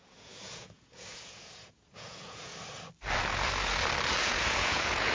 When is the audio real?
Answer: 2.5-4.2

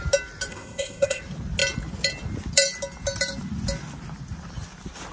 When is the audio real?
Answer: 0.0-0.5; 1.2-5.1